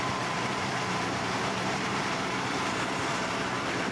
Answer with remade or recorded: remade